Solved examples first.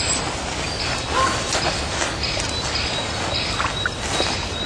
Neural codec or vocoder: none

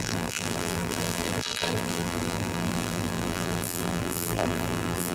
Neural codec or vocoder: vocoder, BigVGAN v2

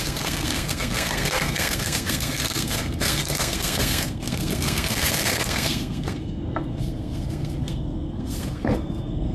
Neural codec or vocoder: codec, SNAC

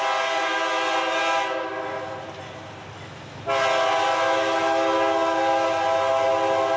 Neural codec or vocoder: none